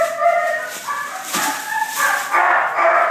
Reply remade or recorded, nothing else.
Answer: recorded